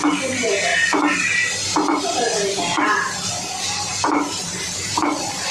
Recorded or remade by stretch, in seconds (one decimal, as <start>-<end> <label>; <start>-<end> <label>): 0.0-5.5 recorded